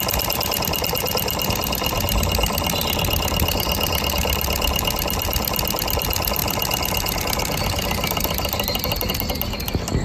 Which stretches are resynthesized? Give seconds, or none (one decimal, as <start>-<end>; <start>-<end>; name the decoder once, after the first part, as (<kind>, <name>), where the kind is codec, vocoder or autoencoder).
none